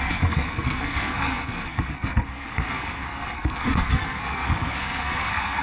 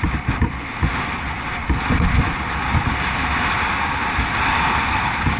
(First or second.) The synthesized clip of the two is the first